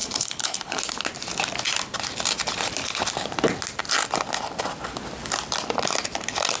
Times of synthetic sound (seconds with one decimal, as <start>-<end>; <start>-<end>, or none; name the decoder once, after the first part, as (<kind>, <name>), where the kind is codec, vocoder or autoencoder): 0.0-0.8 (codec, HILCodec)